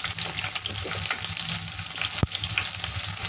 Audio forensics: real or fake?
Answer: real